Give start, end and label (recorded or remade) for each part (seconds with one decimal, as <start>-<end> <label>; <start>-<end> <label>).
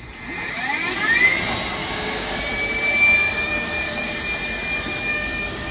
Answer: 0.0-1.8 recorded; 1.8-2.4 remade; 2.4-3.2 recorded; 3.2-4.1 remade; 4.1-5.1 recorded; 5.1-5.7 remade